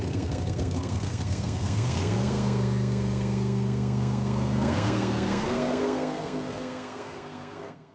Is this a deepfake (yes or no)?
yes